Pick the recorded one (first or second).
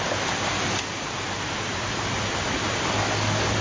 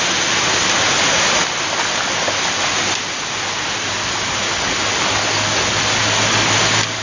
second